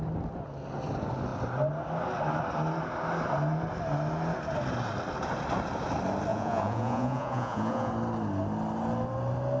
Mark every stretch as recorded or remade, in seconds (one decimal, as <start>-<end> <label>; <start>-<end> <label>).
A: 0.0-6.3 recorded; 6.3-7.9 remade; 7.9-9.6 recorded

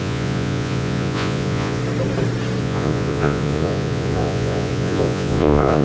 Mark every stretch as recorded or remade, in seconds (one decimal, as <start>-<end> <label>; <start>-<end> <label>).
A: 0.0-1.8 remade; 1.8-2.6 recorded; 2.6-5.8 remade

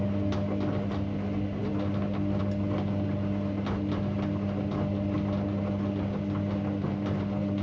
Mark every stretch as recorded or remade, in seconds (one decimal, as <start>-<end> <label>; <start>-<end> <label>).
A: 0.0-7.6 recorded